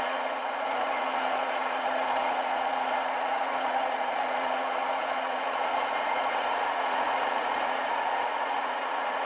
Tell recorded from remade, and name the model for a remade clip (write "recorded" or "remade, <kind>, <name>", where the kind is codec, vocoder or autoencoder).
remade, vocoder, Vocos